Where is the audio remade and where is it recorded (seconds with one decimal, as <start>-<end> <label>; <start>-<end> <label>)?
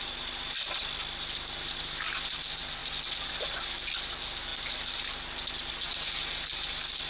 0.0-7.1 recorded